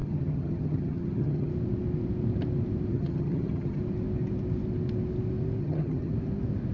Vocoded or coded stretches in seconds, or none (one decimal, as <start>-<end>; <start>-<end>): 0.0-1.5; 2.9-3.8; 5.6-6.1